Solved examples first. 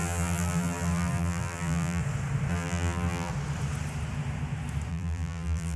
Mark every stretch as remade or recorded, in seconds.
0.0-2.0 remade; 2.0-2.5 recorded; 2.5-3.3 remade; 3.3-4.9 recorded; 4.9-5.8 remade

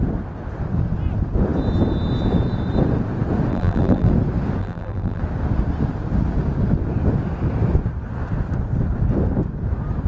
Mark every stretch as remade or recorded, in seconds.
0.0-3.5 recorded; 3.5-4.1 remade; 4.1-4.6 recorded; 4.6-5.2 remade; 5.2-10.1 recorded

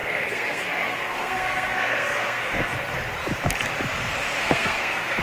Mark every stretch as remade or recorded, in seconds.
0.0-2.7 remade; 2.7-4.4 recorded; 4.4-5.2 remade

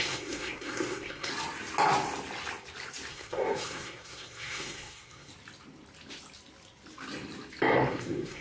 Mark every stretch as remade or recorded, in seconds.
0.0-1.3 remade; 1.3-3.1 recorded; 3.1-5.3 remade; 5.3-7.9 recorded; 7.9-8.4 remade

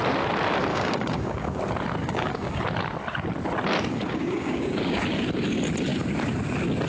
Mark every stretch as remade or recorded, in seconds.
0.0-0.7 recorded; 0.7-1.6 remade; 1.6-2.0 recorded; 2.0-2.6 remade; 2.6-3.9 recorded; 3.9-5.0 remade; 5.0-6.9 recorded

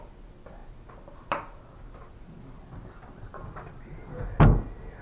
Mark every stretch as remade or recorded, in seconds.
0.0-5.0 recorded

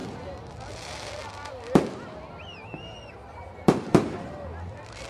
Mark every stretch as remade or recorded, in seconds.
0.0-3.1 recorded; 3.1-5.1 remade